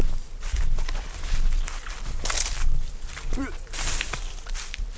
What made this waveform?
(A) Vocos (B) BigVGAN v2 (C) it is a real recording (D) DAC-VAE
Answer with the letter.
C